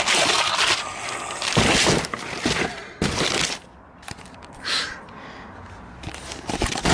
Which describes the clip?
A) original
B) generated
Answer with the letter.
A